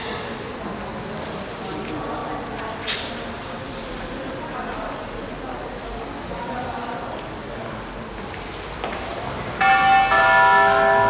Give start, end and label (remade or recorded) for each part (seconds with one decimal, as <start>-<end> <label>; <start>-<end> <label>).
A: 0.0-11.1 recorded